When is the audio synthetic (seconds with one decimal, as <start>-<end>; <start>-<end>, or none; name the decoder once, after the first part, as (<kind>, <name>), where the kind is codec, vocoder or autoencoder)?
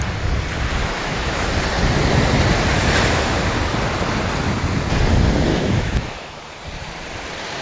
0.8-1.5 (autoencoder, DAC-VAE); 5.5-6.4